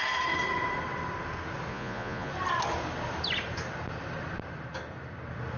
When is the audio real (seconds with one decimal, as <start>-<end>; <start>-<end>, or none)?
0.0-1.7; 2.3-5.6